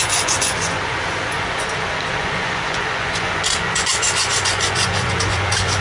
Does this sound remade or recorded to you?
remade